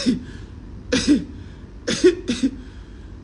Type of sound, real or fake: real